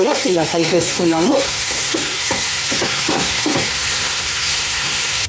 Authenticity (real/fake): fake